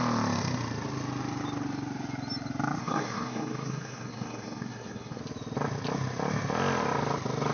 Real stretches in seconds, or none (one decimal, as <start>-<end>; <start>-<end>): 0.0-2.8; 5.2-7.5